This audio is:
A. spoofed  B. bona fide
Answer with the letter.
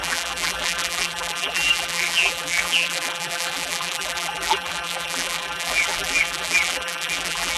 A